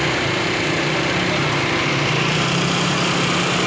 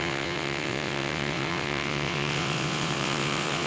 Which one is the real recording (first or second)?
first